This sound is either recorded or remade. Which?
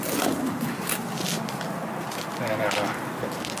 recorded